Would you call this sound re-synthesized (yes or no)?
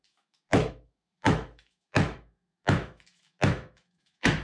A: yes